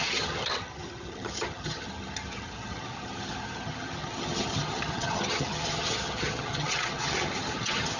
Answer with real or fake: fake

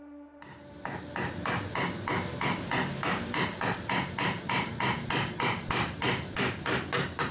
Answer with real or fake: real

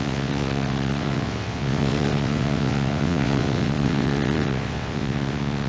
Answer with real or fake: fake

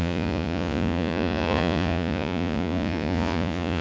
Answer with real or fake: fake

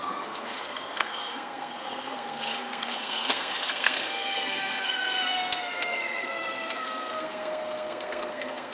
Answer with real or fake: fake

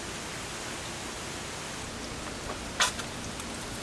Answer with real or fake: real